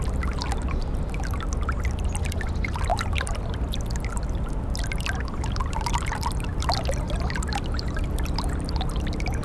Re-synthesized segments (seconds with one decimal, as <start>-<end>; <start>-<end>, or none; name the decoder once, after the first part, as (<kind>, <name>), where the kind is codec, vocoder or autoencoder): 2.9-3.5 (vocoder, BigVGAN v2); 5.6-6.3